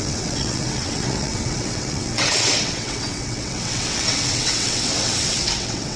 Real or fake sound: fake